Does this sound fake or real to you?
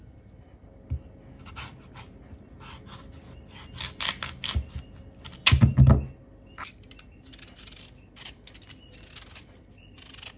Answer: real